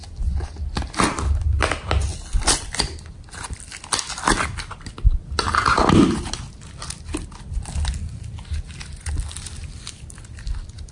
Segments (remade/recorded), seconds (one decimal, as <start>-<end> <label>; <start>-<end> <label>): 0.0-10.9 recorded